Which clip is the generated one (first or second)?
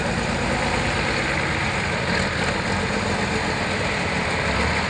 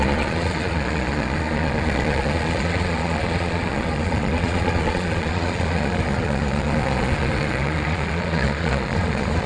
second